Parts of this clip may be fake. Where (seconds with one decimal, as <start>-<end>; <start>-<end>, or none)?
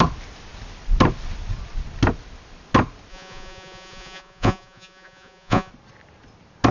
3.1-5.7